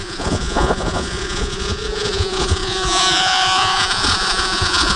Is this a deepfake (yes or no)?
yes